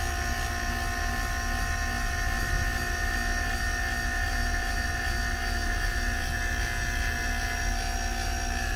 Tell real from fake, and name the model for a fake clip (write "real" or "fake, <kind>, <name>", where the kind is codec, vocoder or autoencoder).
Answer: real